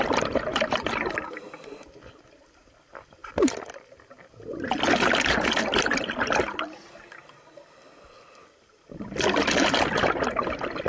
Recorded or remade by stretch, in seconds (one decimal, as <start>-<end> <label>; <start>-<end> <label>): 0.0-10.9 recorded